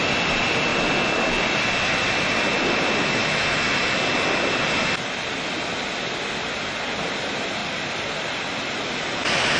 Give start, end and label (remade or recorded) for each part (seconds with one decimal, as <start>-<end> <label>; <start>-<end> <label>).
0.0-9.6 recorded